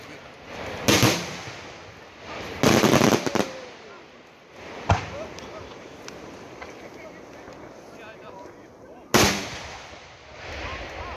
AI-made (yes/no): no